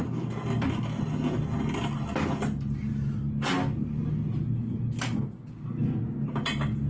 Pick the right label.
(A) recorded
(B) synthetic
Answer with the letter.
A